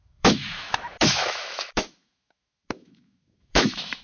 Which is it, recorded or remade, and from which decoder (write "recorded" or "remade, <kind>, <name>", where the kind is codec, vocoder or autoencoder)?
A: remade, autoencoder, DAC-VAE